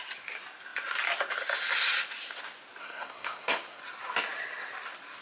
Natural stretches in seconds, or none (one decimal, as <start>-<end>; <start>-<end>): 0.0-2.8; 3.8-5.2